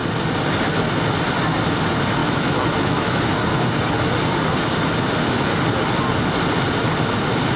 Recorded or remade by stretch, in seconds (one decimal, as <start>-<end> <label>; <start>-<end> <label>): 0.0-2.2 recorded; 2.2-3.2 remade; 3.2-7.6 recorded